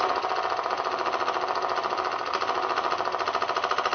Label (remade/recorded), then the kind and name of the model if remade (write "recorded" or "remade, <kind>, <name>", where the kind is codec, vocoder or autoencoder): recorded